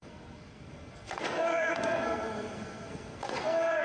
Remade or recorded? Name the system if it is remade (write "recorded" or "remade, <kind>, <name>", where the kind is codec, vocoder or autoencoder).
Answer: remade, codec, SNAC